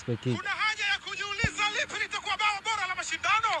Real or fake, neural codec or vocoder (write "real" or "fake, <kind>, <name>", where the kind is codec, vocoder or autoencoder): real